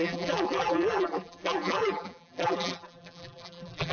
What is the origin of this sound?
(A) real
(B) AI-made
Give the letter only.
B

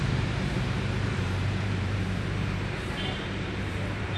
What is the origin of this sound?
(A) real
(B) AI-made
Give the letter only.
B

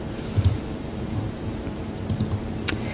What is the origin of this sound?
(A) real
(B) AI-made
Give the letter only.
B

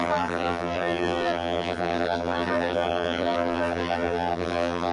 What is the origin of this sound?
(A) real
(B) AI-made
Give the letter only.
B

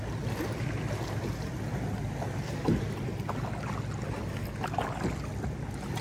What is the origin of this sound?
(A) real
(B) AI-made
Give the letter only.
A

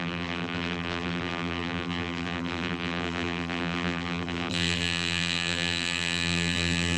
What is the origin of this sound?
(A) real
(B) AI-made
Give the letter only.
B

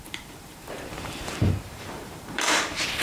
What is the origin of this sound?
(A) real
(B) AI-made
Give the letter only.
B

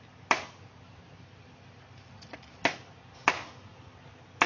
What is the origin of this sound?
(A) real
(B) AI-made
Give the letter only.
A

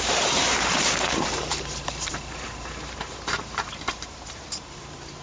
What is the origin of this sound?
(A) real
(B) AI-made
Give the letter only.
B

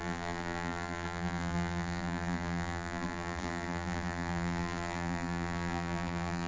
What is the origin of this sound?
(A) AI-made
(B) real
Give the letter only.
A